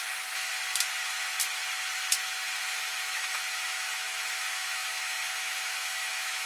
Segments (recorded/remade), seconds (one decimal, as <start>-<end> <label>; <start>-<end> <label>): 0.0-0.5 remade; 0.5-2.6 recorded; 2.6-6.5 remade